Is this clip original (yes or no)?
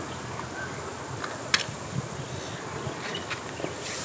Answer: yes